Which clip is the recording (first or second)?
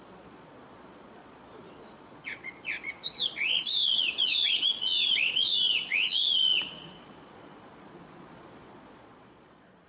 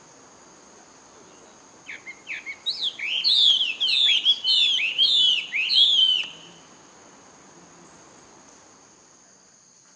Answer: second